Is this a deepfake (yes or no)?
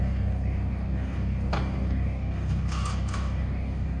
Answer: yes